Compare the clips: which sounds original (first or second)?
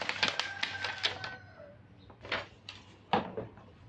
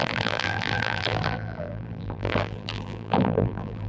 first